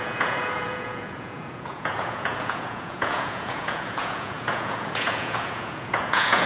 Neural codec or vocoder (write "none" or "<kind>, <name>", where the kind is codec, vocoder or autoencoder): vocoder, Vocos